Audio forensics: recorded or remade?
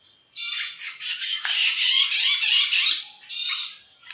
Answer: recorded